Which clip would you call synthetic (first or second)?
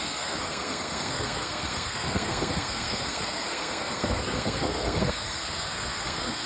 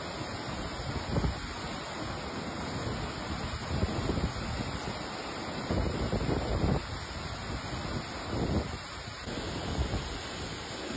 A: first